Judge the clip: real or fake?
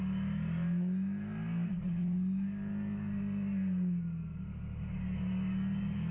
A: real